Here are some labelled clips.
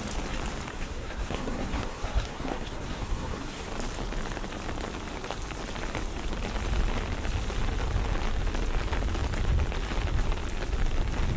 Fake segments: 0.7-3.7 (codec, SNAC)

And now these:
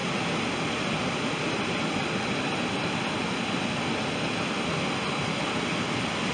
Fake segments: none

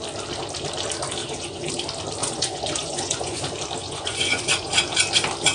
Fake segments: 1.2-1.7 (vocoder, Vocos); 2.2-3.4; 3.8-4.7

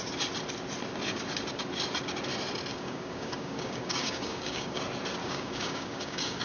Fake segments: 2.7-4.8 (codec, DAC); 5.2-6.4

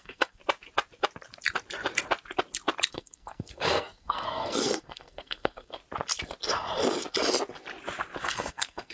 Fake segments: 0.0-0.4 (codec, SNAC); 2.9-5.8; 8.2-8.9